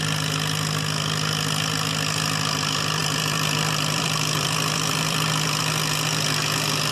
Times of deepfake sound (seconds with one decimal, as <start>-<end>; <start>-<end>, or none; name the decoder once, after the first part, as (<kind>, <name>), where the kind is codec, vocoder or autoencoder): 3.0-5.6 (vocoder, BigVGAN v2)